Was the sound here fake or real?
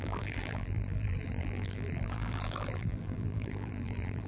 fake